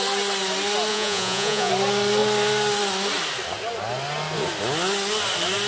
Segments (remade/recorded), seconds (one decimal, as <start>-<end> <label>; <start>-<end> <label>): 0.0-0.9 recorded; 0.9-1.7 remade; 1.7-5.7 recorded